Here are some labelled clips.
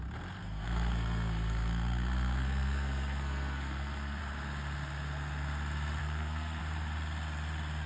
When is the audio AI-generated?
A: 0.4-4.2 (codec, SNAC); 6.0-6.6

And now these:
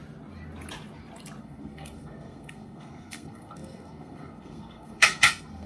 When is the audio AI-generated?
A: 1.4-5.7 (codec, SNAC)

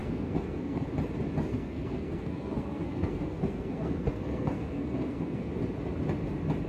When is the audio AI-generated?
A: 0.0-0.9 (codec, SNAC); 1.5-5.5

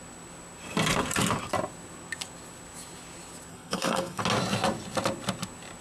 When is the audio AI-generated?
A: 3.5-4.2 (codec, SNAC)

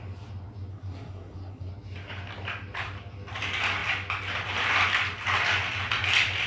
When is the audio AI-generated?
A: 0.7-1.7 (codec, SNAC)

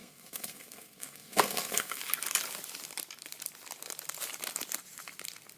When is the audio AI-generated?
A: 0.0-2.0 (codec, SNAC)

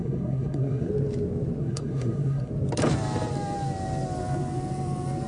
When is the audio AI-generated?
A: 0.0-0.9 (codec, SNAC); 1.6-2.5

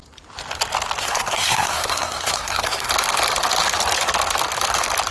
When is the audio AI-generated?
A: 1.0-2.9 (codec, SNAC)